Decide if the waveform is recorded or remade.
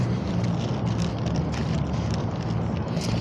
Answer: recorded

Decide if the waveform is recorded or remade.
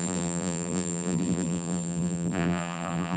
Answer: remade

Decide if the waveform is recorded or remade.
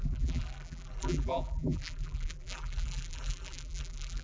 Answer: remade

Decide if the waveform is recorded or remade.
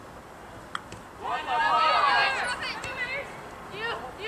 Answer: recorded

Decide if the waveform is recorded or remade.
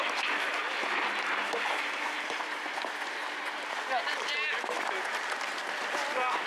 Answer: recorded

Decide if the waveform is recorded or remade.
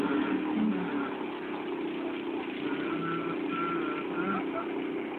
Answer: recorded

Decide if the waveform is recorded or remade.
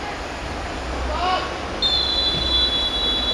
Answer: recorded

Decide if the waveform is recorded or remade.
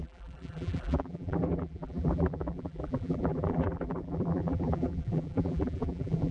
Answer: remade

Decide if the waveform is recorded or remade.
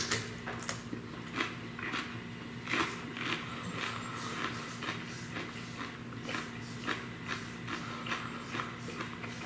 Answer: recorded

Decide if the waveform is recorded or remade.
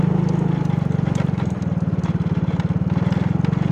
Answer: recorded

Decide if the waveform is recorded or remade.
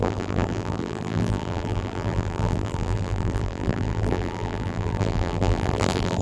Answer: remade